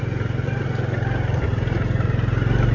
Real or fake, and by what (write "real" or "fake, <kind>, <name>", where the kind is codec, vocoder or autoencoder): real